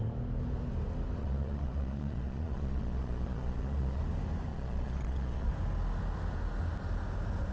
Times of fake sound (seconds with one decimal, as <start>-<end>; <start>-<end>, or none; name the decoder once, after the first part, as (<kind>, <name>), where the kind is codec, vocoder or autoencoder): 1.2-4.0 (vocoder, Vocos); 4.5-5.5